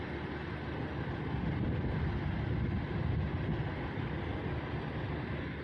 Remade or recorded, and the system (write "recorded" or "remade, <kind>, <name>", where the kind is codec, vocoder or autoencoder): recorded